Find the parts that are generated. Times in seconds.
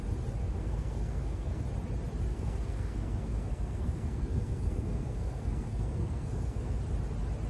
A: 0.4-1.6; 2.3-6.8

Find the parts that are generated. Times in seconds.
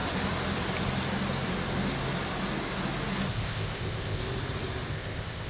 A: 3.3-4.2; 4.9-5.5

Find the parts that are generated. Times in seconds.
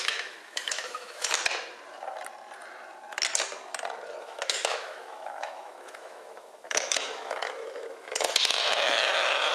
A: 0.0-1.4; 4.2-9.5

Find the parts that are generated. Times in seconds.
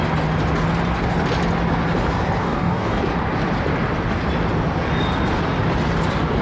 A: 2.4-3.0